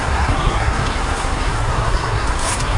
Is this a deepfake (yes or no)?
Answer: yes